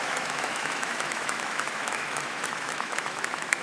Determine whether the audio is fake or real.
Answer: fake